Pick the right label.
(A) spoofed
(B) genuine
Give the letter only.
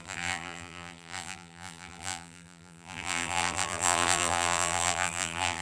A